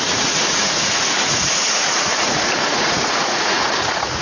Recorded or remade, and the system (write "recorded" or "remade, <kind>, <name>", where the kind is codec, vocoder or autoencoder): remade, vocoder, Vocos